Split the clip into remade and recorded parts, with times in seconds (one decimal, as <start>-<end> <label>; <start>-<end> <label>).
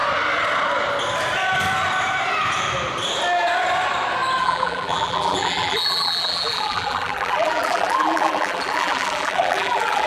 0.0-4.4 recorded; 4.4-10.1 remade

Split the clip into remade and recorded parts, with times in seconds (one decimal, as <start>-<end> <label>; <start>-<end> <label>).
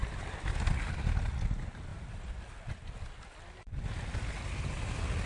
0.0-5.3 recorded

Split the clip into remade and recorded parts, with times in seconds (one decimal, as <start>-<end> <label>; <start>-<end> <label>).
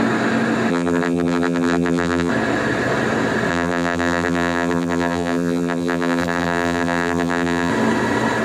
0.0-0.7 recorded; 0.7-2.3 remade; 2.3-3.5 recorded; 3.5-7.7 remade; 7.7-8.4 recorded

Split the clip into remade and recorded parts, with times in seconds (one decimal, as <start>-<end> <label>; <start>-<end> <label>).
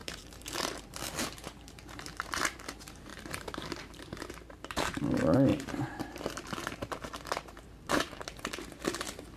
0.0-9.4 remade